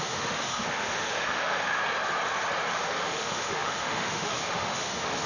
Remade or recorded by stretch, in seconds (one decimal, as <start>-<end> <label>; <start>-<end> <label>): 0.0-1.8 remade; 1.8-2.7 recorded; 2.7-5.3 remade